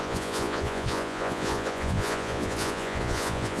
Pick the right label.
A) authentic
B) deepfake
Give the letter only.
B